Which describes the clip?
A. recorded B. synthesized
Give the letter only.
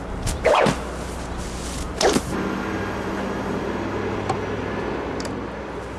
A